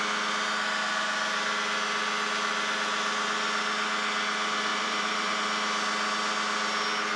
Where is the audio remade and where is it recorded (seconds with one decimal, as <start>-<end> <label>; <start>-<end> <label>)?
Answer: 0.0-4.7 recorded; 4.7-5.3 remade; 5.3-7.2 recorded